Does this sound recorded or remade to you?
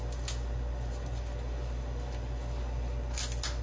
recorded